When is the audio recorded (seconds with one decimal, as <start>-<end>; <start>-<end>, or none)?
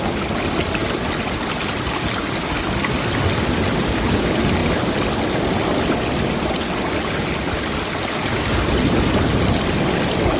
0.0-10.4